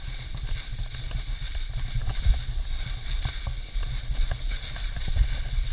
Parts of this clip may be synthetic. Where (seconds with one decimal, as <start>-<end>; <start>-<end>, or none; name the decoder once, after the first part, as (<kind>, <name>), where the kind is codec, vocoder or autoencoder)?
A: none